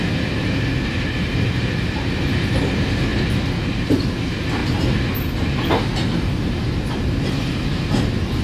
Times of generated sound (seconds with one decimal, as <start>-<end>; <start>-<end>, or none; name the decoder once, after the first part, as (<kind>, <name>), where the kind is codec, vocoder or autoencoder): 0.0-3.1 (vocoder, BigVGAN v2); 3.8-8.4